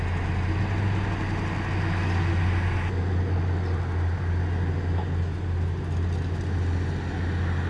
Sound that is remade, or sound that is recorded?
recorded